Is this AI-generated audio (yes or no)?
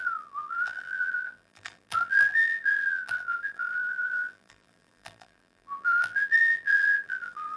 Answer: yes